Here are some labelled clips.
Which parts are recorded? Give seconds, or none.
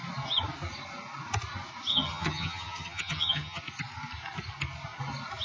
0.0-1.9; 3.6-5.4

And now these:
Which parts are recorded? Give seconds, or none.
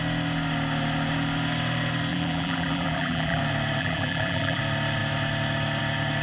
0.0-2.1; 3.4-3.8; 4.6-6.2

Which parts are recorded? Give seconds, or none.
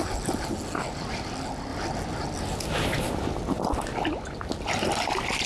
0.0-5.5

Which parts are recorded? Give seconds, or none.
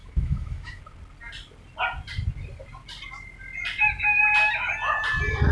0.8-5.5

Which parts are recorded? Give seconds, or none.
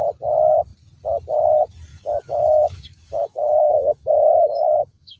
0.0-1.9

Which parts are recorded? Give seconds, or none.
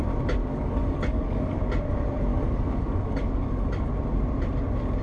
0.0-0.4; 1.7-2.3; 3.9-5.0